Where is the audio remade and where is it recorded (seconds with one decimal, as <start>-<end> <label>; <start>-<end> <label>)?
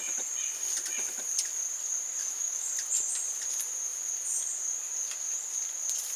0.0-2.2 recorded; 2.2-2.7 remade; 2.7-6.2 recorded